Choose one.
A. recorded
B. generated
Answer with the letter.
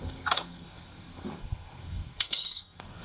B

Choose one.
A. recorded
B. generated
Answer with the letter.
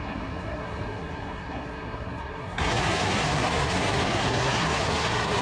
B